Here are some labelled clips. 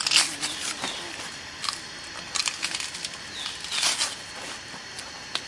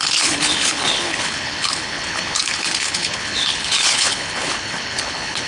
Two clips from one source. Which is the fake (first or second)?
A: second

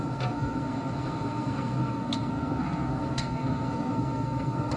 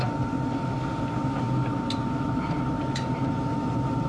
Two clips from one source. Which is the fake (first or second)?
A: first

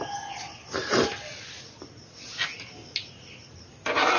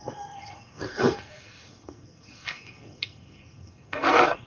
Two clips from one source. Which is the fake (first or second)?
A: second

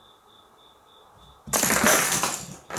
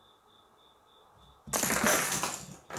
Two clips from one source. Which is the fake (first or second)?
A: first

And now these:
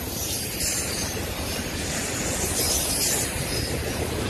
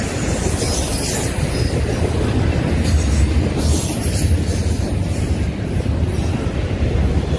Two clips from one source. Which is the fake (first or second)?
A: first